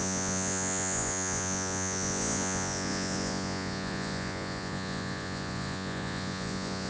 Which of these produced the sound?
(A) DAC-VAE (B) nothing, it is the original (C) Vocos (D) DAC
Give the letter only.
C